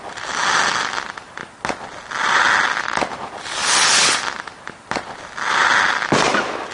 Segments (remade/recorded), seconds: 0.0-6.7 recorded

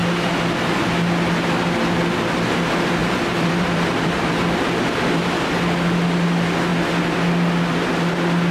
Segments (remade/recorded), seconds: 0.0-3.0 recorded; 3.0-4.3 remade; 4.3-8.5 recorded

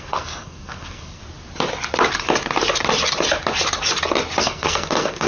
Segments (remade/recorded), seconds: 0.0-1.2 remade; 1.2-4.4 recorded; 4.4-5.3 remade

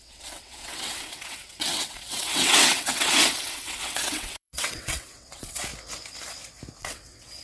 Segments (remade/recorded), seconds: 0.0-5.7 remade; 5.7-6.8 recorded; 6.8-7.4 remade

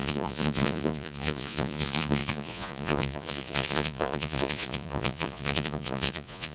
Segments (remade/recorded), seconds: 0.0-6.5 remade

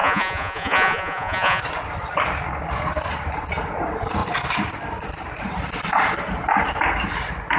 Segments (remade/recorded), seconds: 0.0-1.6 remade; 1.6-7.6 recorded

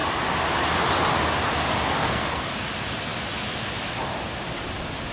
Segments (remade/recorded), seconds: 0.0-2.0 recorded; 2.0-2.5 remade; 2.5-5.1 recorded

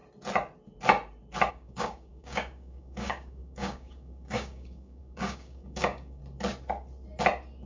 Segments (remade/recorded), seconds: 0.0-1.5 recorded; 1.5-6.2 remade; 6.2-7.7 recorded